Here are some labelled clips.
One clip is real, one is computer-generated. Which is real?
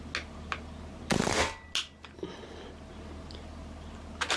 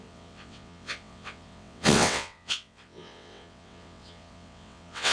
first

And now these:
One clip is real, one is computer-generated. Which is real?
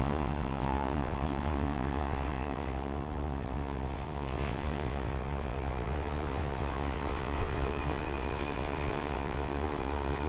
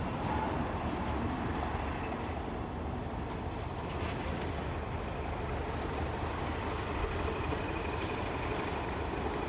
second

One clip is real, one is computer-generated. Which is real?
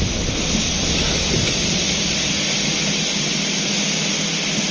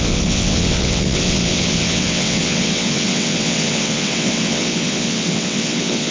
first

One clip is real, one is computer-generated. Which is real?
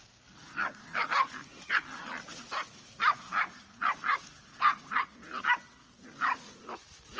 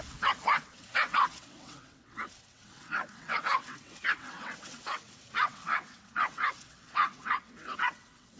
first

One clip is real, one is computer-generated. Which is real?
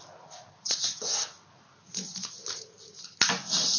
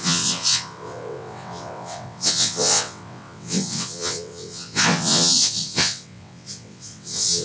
first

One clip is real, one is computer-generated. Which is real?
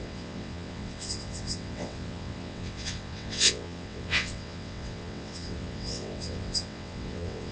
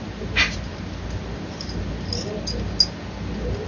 second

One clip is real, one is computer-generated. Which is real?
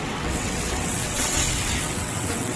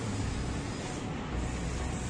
second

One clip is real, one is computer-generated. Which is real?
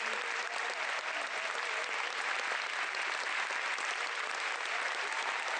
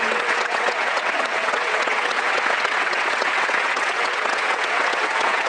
first